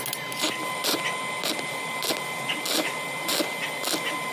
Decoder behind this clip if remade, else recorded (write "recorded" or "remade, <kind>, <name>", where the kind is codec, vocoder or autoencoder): recorded